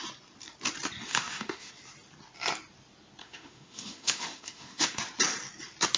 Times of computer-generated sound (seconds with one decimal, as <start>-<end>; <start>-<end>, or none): 1.1-1.7; 3.2-5.0